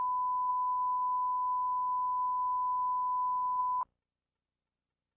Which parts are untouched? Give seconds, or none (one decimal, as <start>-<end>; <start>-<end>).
0.0-0.5; 3.6-5.2

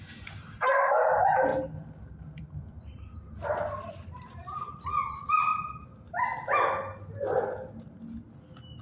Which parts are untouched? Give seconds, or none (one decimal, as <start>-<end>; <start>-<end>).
0.0-1.5; 4.8-5.5; 6.2-8.8

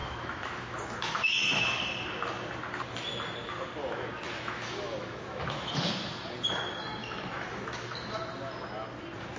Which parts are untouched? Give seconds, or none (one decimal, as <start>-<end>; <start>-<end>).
1.6-3.8; 5.9-7.0; 8.2-9.4

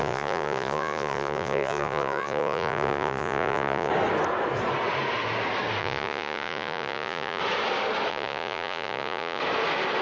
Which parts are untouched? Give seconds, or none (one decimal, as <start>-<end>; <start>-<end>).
3.9-5.8; 7.4-8.1; 9.4-10.0

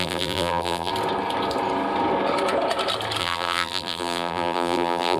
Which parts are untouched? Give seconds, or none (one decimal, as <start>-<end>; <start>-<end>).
0.9-3.2

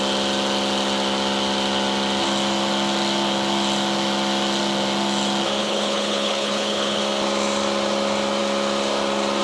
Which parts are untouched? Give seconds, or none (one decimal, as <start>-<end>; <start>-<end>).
0.0-5.6; 7.0-9.4

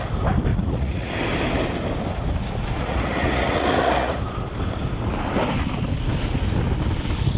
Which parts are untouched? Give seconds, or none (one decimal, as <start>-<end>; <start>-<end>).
0.0-0.5; 1.1-2.8; 4.2-7.4

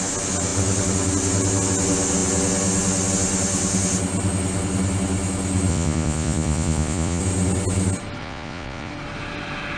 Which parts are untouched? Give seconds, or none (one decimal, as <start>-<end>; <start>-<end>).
0.0-5.7; 7.2-8.2; 8.9-9.8